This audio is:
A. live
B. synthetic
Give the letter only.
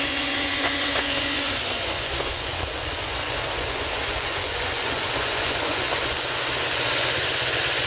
B